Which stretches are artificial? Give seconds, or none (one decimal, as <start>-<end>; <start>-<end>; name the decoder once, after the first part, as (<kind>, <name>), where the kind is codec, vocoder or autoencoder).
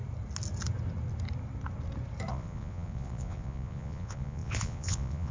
2.3-5.3 (vocoder, Vocos)